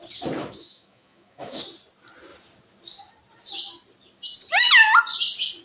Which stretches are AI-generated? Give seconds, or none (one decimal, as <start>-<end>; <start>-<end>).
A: 0.4-1.6